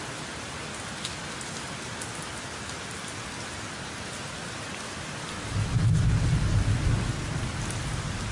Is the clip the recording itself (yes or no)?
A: yes